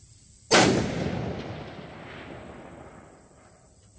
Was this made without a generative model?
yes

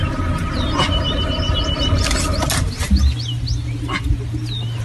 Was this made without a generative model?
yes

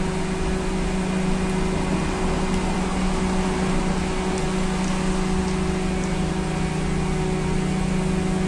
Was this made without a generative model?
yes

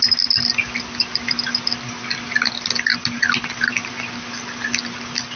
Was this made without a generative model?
yes